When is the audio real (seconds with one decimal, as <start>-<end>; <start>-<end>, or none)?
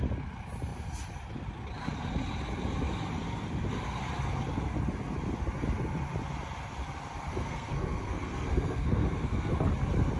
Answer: 0.0-7.3; 9.5-10.2